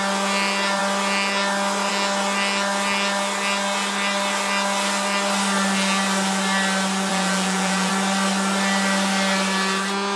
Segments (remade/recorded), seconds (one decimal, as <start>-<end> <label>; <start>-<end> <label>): 0.0-7.1 recorded; 7.1-7.9 remade; 7.9-10.2 recorded